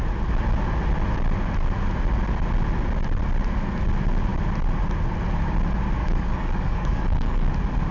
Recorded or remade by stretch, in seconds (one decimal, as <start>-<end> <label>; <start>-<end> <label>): 0.0-6.0 recorded; 6.0-7.5 remade; 7.5-7.9 recorded